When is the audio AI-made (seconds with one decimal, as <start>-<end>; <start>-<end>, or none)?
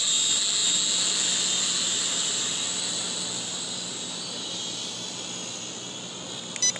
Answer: none